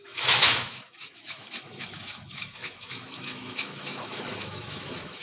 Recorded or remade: remade